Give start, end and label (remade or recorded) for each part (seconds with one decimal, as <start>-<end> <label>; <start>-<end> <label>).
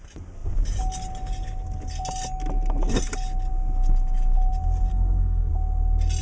0.0-4.9 recorded; 4.9-5.5 remade; 5.5-6.2 recorded